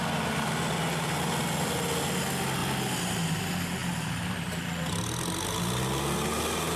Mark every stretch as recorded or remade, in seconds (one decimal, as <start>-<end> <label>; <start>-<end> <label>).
0.0-3.8 recorded; 3.8-5.6 remade; 5.6-6.8 recorded